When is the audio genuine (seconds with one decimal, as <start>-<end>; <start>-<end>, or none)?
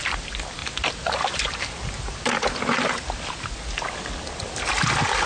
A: 0.0-5.3